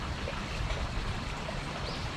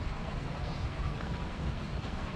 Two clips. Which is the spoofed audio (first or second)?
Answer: second